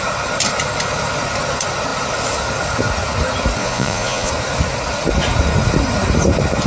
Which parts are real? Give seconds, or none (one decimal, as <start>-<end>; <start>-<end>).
0.0-3.6; 4.3-6.7